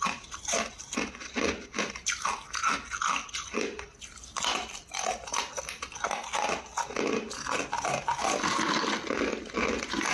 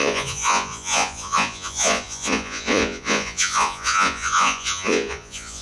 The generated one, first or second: second